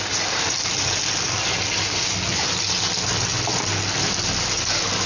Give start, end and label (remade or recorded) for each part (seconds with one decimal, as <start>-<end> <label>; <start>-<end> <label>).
0.0-5.1 recorded